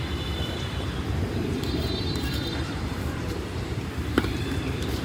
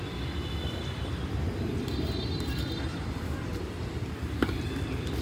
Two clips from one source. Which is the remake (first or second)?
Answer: first